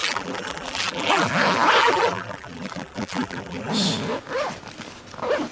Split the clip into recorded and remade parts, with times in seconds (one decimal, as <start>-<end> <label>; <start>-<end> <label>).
0.0-1.3 remade; 1.3-1.8 recorded; 1.8-3.7 remade; 3.7-5.5 recorded